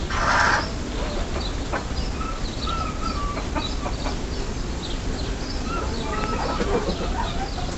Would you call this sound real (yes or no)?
yes